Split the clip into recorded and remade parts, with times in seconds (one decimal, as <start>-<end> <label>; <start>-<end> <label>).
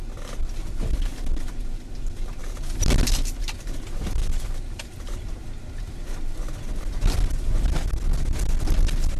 0.0-9.2 recorded